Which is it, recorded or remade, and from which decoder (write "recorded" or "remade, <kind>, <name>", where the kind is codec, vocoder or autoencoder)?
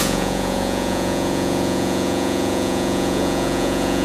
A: remade, vocoder, Vocos